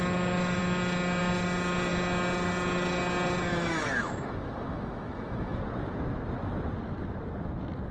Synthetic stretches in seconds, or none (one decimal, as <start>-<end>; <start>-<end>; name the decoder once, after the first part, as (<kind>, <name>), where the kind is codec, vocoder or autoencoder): 3.5-5.6 (autoencoder, DAC-VAE)